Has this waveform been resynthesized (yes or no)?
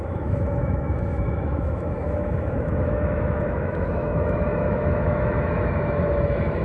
yes